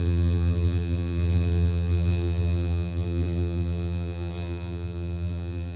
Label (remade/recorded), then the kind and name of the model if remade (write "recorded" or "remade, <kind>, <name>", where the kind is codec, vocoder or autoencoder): remade, vocoder, BigVGAN v2